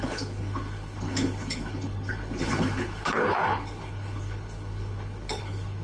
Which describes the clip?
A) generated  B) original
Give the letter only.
A